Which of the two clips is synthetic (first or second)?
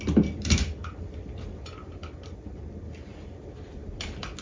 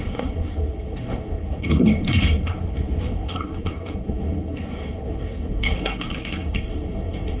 second